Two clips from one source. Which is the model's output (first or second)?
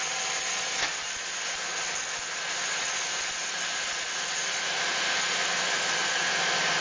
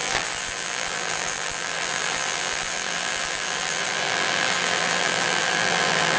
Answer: second